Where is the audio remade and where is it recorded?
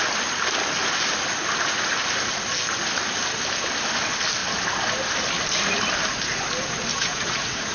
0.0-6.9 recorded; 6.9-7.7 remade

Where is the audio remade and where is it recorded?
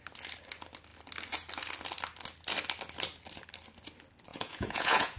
0.0-4.3 recorded; 4.3-5.2 remade